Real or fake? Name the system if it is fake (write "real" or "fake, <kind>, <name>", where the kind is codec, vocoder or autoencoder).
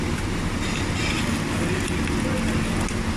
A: real